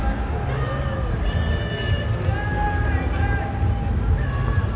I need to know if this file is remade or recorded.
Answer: recorded